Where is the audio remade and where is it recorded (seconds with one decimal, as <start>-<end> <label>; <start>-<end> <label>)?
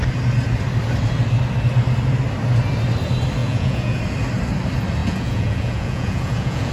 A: 0.0-3.4 recorded; 3.4-4.0 remade; 4.0-5.0 recorded; 5.0-6.7 remade